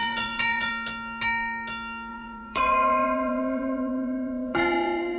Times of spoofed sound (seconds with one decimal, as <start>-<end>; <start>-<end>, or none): 0.0-0.7; 2.1-5.2